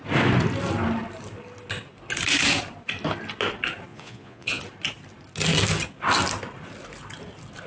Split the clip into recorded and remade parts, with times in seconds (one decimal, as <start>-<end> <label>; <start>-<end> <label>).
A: 0.0-3.9 recorded; 3.9-4.6 remade; 4.6-7.7 recorded